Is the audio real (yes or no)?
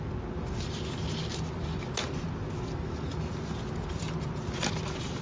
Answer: yes